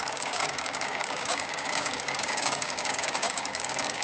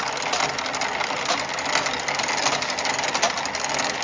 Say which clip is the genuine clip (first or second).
second